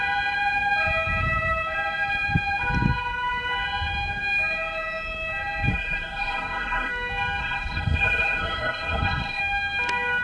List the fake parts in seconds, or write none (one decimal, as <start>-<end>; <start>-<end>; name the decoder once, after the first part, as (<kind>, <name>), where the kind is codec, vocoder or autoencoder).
5.7-6.9 (codec, SNAC); 7.4-9.4